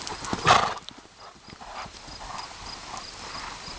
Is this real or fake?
real